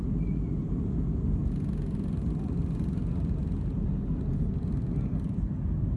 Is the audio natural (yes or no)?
yes